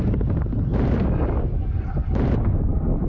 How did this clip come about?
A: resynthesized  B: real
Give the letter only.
B